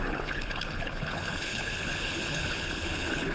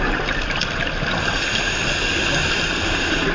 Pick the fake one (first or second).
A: first